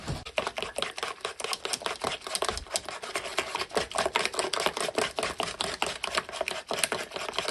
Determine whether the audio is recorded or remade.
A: recorded